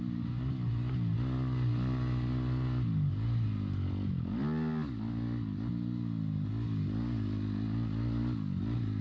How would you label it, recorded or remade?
recorded